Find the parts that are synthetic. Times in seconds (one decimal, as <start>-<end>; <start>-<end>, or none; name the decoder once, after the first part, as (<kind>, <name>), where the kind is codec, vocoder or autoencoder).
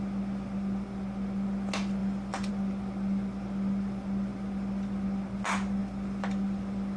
2.0-2.5 (vocoder, BigVGAN v2); 5.8-6.6